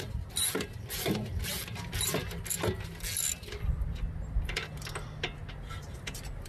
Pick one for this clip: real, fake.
real